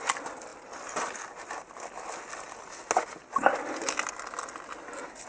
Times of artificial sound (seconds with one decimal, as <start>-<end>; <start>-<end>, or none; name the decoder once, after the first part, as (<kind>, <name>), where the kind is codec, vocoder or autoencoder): none